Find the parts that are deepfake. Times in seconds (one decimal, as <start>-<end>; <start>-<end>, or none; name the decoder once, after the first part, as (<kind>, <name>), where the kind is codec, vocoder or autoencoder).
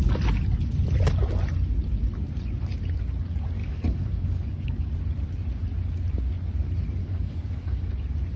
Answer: 3.6-4.9 (codec, DAC); 7.0-7.9